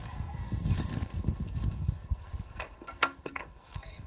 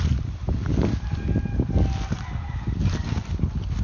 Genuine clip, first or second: second